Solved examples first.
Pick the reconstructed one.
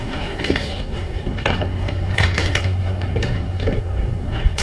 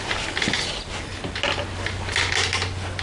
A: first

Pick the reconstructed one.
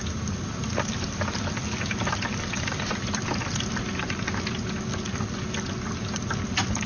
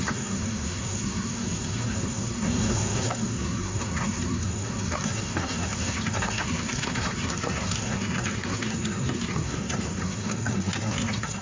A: second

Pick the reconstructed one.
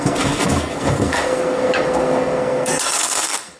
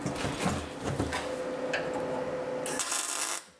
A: first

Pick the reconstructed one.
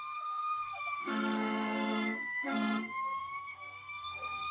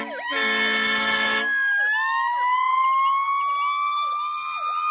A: first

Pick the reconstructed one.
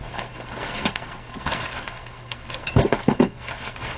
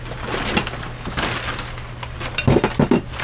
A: first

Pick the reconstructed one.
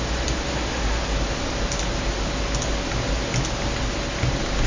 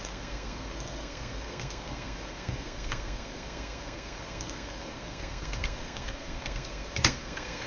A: second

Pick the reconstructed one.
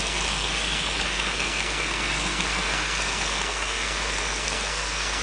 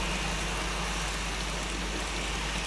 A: first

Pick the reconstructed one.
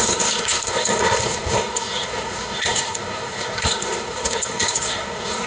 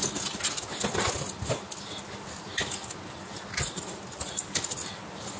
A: first